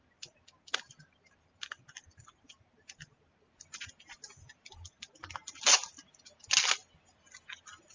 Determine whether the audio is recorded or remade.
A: recorded